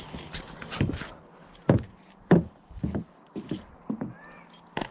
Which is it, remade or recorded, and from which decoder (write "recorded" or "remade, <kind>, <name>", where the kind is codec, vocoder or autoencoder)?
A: recorded